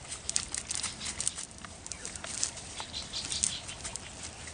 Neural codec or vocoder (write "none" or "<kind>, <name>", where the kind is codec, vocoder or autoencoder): none